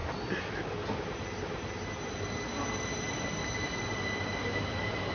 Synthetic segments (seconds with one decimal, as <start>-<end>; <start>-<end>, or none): none